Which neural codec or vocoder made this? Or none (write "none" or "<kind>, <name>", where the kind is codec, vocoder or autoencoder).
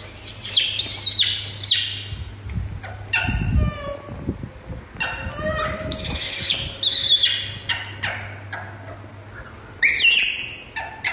none